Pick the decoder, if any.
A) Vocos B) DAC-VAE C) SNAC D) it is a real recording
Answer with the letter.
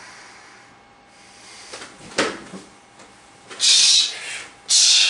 D